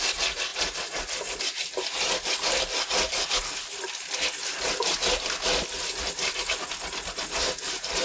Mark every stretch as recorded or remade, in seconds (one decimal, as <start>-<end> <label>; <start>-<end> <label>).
0.0-8.0 recorded

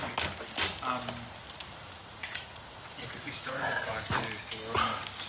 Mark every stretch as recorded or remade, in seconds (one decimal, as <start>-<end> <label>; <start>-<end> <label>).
0.0-1.6 recorded; 1.6-3.9 remade; 3.9-5.3 recorded

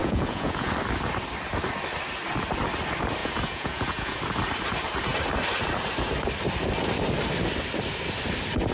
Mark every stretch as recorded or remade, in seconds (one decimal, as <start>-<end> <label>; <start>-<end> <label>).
0.0-0.7 remade; 0.7-3.2 recorded; 3.2-4.2 remade; 4.2-8.7 recorded

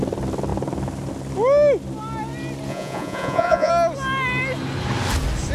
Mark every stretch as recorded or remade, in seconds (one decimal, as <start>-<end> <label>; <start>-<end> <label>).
0.0-2.7 recorded; 2.7-3.7 remade; 3.7-5.5 recorded

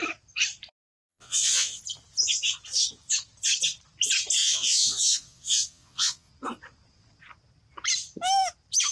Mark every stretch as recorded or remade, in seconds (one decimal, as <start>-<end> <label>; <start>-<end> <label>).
0.0-1.1 recorded; 1.1-1.8 remade; 1.8-4.4 recorded; 4.4-6.3 remade; 6.3-8.9 recorded

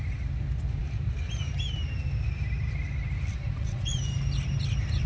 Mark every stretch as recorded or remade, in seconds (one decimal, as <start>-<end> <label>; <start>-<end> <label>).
0.0-3.3 recorded; 3.3-4.0 remade; 4.0-5.1 recorded

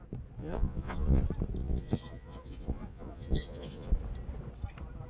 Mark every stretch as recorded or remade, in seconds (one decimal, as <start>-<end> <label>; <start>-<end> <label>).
0.0-0.4 recorded; 0.4-1.2 remade; 1.2-1.6 recorded; 1.6-3.9 remade; 3.9-5.1 recorded